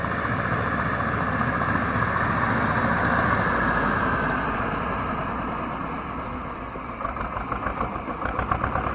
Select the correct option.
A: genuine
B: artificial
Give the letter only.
A